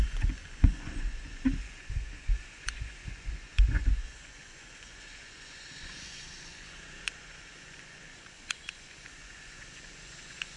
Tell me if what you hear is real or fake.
fake